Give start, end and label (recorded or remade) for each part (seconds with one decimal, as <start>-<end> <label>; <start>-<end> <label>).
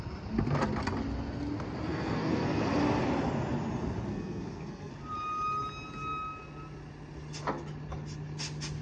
0.0-1.9 recorded; 1.9-2.6 remade; 2.6-4.1 recorded; 4.1-4.9 remade; 4.9-8.8 recorded